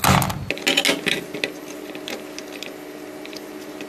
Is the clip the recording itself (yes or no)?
yes